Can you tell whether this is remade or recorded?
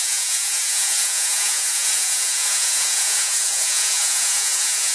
remade